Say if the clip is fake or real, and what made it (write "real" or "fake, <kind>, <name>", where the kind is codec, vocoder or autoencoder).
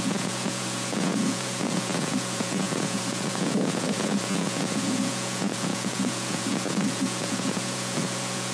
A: fake, vocoder, Vocos